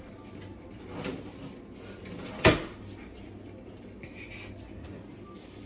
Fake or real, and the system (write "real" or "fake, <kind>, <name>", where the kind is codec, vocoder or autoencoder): real